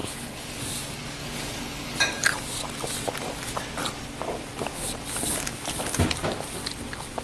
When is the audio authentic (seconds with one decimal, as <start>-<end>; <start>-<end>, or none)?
0.6-1.2; 2.0-7.2